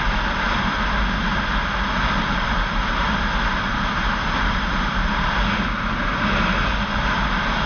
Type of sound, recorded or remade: recorded